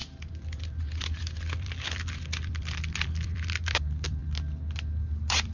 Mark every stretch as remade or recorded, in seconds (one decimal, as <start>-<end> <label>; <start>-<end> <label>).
0.0-1.2 recorded; 1.2-4.2 remade; 4.2-4.8 recorded; 4.8-5.5 remade